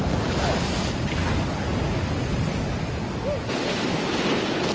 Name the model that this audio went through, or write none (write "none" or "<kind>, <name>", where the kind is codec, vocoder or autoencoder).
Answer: none